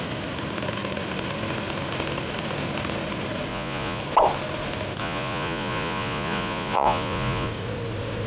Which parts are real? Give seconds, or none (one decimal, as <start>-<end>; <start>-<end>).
0.0-3.5; 4.0-5.0; 7.5-8.3